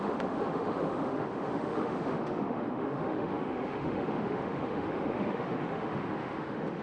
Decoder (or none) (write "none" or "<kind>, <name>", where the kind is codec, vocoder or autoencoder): autoencoder, DAC-VAE